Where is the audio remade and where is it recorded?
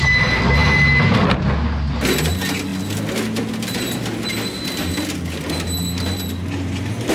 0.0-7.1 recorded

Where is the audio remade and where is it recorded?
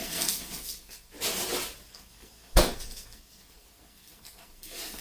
0.0-1.1 remade; 1.1-1.9 recorded; 1.9-5.0 remade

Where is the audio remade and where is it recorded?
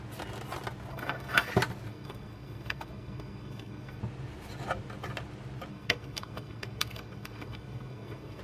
0.0-0.9 recorded; 0.9-1.5 remade; 1.5-1.9 recorded; 1.9-4.0 remade; 4.0-5.7 recorded; 5.7-8.4 remade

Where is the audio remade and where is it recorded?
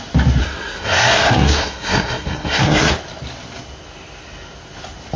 0.0-0.4 recorded; 0.4-2.9 remade; 2.9-5.2 recorded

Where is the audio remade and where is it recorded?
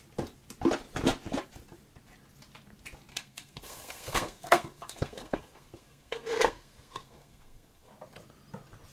0.0-3.1 recorded; 3.1-7.9 remade; 7.9-8.9 recorded